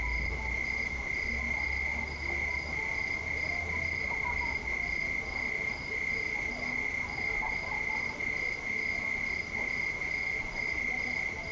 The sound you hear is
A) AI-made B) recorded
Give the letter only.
B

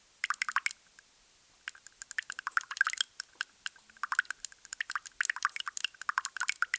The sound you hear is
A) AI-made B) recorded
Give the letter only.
B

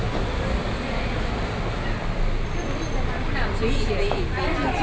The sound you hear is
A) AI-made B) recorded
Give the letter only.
B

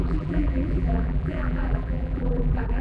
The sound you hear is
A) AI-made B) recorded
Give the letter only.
A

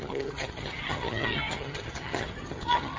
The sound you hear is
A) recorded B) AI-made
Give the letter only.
B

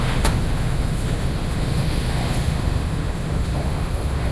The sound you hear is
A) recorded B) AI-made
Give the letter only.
B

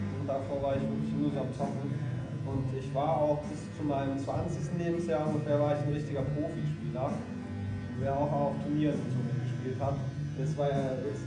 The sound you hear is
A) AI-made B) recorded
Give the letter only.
B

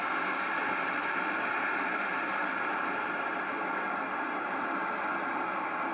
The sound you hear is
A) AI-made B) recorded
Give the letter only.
B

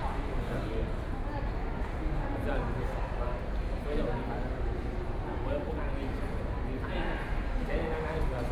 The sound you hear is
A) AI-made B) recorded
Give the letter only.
B